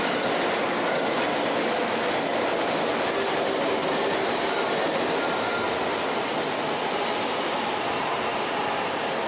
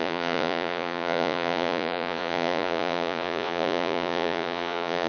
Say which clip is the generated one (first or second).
second